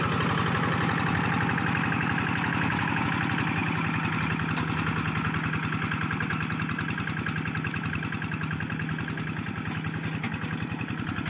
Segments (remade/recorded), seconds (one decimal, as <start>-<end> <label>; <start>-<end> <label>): 0.0-11.3 recorded